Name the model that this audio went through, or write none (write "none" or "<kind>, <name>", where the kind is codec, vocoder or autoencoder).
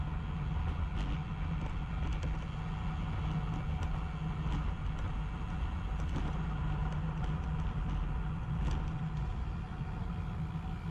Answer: none